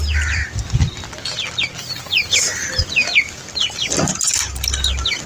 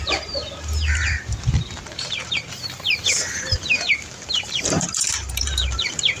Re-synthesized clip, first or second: second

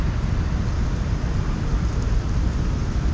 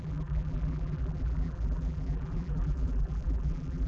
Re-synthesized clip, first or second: second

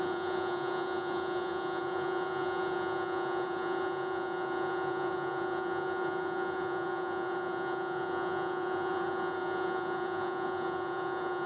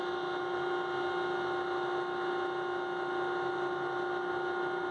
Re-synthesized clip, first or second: first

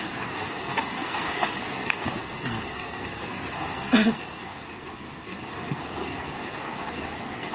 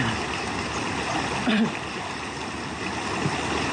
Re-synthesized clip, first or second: first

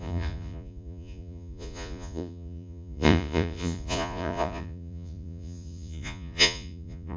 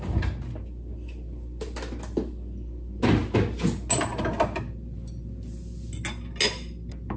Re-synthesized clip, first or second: first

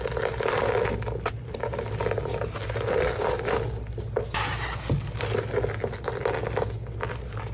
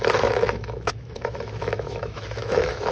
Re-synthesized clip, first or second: second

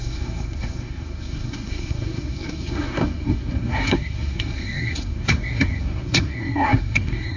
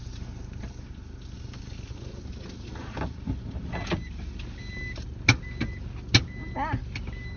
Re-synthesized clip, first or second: first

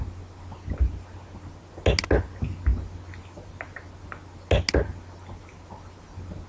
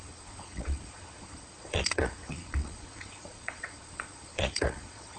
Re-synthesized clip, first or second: second